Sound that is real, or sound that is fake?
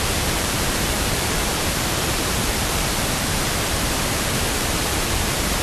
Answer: fake